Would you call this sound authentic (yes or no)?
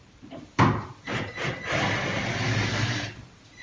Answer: yes